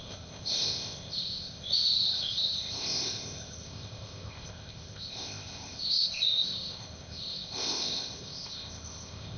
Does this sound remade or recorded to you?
remade